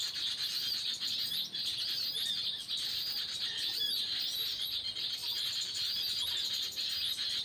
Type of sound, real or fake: real